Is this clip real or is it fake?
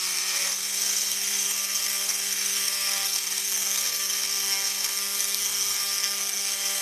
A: fake